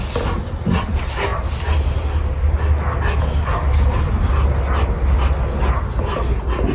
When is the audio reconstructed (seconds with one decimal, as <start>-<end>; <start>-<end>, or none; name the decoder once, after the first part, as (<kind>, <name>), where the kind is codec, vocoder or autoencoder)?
none

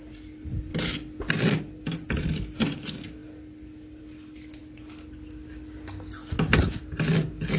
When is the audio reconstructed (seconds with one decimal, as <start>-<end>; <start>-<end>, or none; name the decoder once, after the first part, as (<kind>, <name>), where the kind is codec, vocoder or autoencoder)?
none